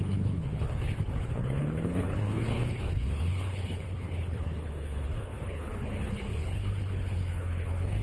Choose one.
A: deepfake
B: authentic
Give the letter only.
A